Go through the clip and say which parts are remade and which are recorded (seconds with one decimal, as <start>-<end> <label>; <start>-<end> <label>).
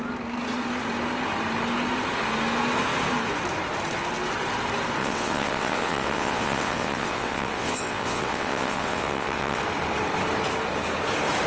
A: 0.0-5.0 recorded; 5.0-9.6 remade; 9.6-11.5 recorded